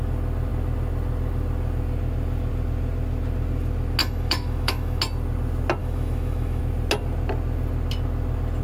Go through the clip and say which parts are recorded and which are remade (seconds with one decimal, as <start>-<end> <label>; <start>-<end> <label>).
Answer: 0.0-4.0 recorded; 4.0-5.0 remade; 5.0-5.8 recorded; 5.8-6.6 remade; 6.6-8.6 recorded